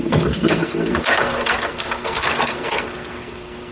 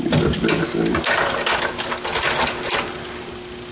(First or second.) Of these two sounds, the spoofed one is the first